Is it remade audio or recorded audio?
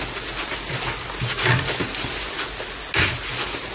recorded